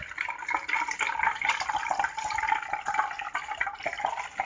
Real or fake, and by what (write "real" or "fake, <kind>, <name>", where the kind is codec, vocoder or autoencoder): real